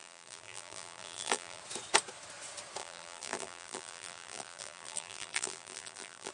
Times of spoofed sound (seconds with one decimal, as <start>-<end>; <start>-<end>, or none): 0.0-1.6; 2.8-6.3